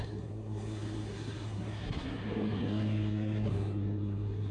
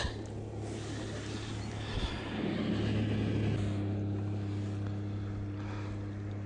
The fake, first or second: first